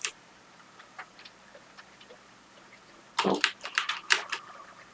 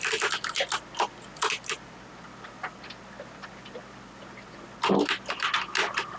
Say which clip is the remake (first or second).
first